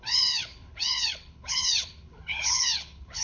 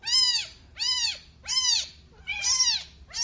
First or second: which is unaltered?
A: second